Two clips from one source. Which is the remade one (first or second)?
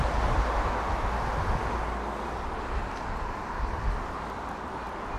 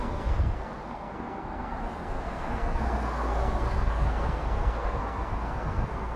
second